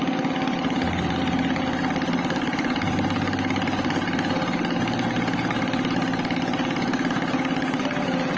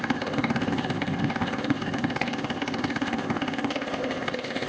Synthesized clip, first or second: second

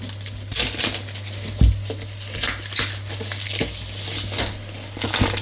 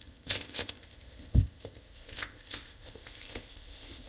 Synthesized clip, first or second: second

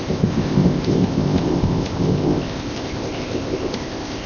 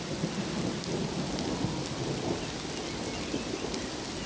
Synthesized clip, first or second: first